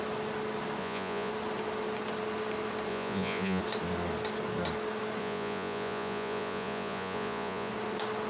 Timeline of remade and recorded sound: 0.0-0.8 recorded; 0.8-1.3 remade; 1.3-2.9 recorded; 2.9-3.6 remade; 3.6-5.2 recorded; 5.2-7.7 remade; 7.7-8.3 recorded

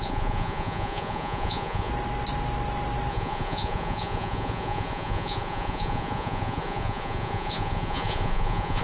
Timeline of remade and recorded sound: 0.0-1.9 remade; 1.9-3.1 recorded; 3.1-8.8 remade

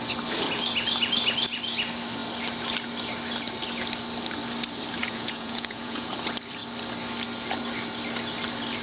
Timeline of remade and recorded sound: 0.0-5.0 recorded; 5.0-6.1 remade; 6.1-8.8 recorded

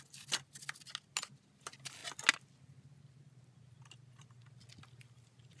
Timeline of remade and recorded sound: 0.0-5.6 recorded

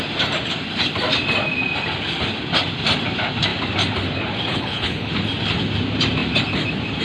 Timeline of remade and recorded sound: 0.0-4.5 recorded; 4.5-5.1 remade; 5.1-7.0 recorded

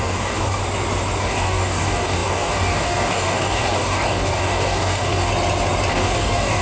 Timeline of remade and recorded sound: 0.0-0.6 remade; 0.6-1.2 recorded; 1.2-5.3 remade; 5.3-5.9 recorded; 5.9-6.6 remade

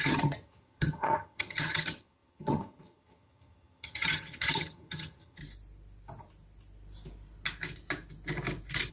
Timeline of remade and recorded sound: 0.0-5.4 remade; 5.4-8.9 recorded